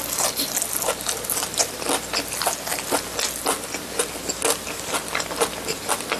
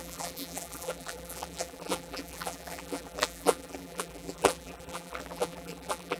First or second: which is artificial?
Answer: second